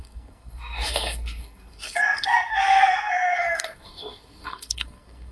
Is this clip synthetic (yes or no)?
yes